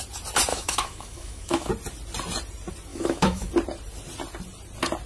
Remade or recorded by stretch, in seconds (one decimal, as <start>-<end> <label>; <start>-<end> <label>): 0.0-0.5 recorded; 0.5-1.7 remade; 1.7-2.9 recorded; 2.9-3.5 remade; 3.5-5.1 recorded